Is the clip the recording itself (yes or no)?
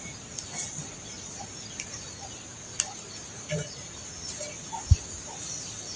yes